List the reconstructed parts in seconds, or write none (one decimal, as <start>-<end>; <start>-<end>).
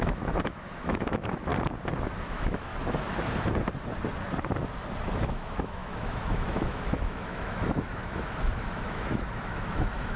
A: 0.0-1.5; 2.2-2.7; 5.1-10.2